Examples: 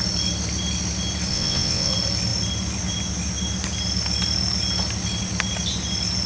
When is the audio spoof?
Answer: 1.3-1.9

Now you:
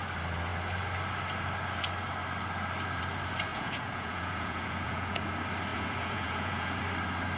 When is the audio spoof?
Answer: 3.5-5.3; 5.7-6.8

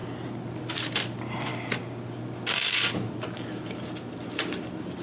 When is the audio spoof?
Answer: none

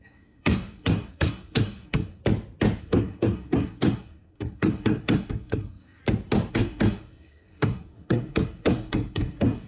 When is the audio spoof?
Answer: 0.0-2.2; 2.8-6.0; 6.5-9.7

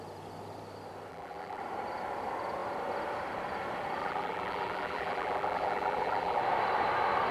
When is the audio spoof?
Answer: 1.1-1.6; 4.0-6.4

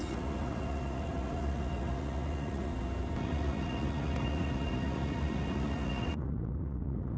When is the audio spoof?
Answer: 0.0-2.7; 3.2-7.2